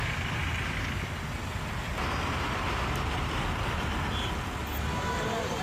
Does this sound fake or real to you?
real